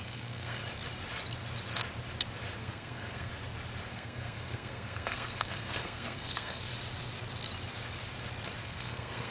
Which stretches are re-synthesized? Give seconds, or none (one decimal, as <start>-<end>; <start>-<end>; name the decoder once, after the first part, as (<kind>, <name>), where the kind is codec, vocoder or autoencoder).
0.0-0.6 (codec, SNAC); 2.6-3.3; 3.9-6.7; 8.6-9.3